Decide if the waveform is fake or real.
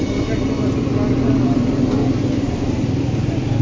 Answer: real